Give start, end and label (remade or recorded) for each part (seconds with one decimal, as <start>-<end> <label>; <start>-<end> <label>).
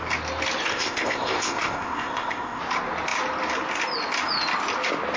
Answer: 0.0-0.7 recorded; 0.7-2.6 remade; 2.6-5.2 recorded